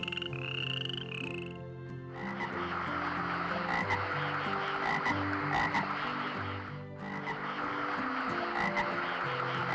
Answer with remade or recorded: recorded